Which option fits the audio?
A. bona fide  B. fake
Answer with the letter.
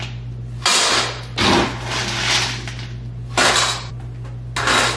A